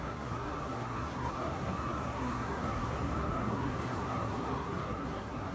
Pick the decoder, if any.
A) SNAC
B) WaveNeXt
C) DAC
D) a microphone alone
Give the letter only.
A